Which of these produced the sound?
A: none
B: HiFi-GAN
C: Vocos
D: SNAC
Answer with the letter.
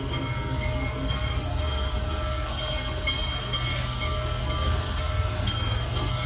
D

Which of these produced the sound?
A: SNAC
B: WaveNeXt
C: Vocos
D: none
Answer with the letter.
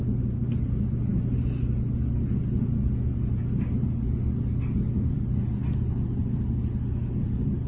D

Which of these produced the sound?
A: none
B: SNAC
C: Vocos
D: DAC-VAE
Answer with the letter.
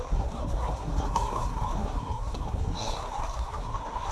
B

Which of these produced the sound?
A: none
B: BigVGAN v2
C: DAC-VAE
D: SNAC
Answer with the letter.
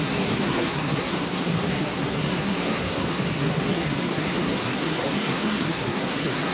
D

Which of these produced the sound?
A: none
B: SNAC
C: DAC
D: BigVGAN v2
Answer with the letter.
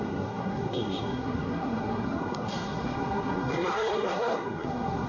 B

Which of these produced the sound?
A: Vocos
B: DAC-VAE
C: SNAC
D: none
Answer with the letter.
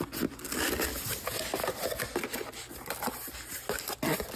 D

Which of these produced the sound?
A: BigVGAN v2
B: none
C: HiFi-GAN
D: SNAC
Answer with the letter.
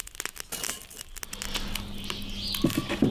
B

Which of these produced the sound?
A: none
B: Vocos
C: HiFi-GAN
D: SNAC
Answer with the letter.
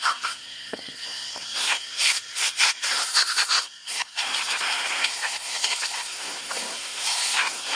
D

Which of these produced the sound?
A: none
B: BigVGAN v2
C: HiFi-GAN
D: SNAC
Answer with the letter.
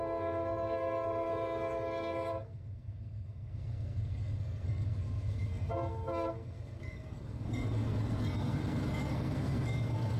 D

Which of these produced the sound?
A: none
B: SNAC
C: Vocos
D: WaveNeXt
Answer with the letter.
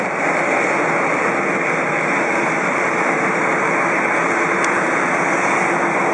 A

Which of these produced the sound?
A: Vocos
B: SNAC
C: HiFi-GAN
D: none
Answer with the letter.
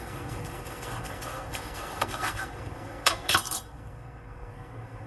B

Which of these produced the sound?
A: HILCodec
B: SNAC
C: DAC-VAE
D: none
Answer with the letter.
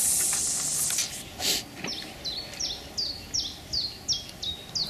D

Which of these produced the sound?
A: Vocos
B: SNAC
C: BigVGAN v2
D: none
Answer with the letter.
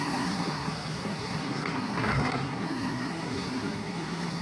B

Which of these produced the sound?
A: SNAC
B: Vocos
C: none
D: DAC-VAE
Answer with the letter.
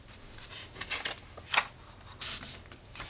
C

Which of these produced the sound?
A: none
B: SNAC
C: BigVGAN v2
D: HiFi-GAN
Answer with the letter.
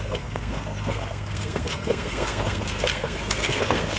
B